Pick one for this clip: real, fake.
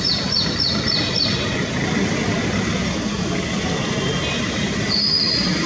real